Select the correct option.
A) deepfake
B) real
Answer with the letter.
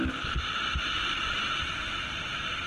A